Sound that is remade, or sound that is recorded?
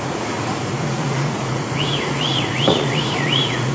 remade